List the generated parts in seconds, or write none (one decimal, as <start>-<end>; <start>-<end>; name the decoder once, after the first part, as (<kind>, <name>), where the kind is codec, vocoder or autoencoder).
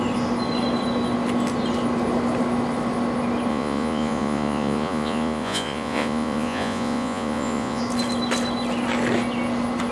3.5-7.8 (vocoder, Vocos)